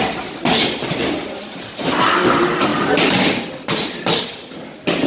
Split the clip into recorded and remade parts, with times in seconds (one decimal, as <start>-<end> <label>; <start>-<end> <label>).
0.0-5.1 recorded